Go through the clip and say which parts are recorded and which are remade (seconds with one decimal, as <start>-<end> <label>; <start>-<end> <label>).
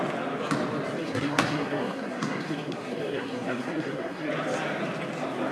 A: 0.0-1.0 recorded; 1.0-4.3 remade; 4.3-5.5 recorded